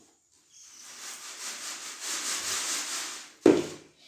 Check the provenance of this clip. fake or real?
real